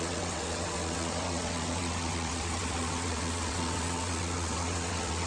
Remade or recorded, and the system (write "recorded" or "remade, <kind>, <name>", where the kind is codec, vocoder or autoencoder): remade, vocoder, WaveNeXt